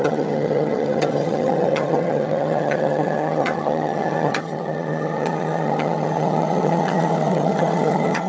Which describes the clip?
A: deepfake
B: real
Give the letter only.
A